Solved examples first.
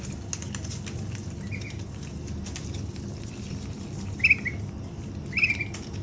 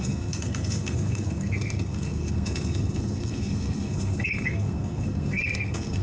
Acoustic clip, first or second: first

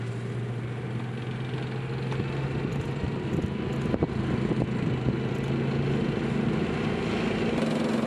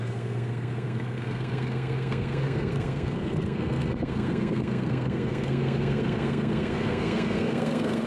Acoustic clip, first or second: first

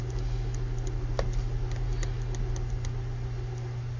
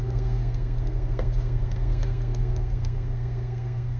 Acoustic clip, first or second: first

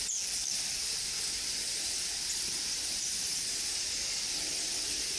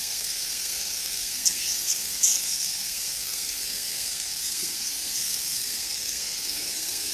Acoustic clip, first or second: first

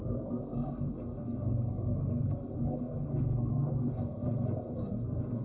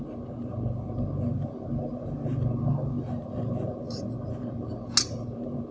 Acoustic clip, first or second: second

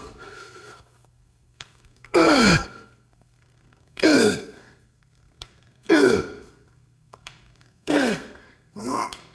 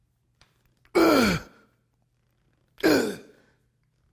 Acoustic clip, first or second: second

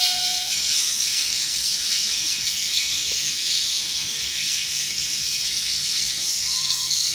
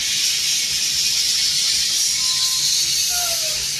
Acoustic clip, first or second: second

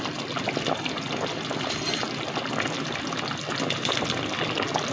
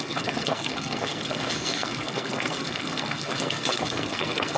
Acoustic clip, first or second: first